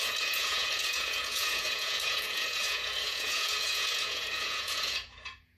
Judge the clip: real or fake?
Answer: fake